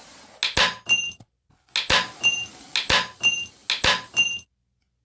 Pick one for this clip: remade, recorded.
recorded